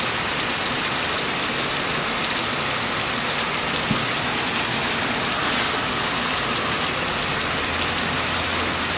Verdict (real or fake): real